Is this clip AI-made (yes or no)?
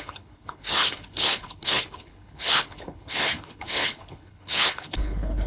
yes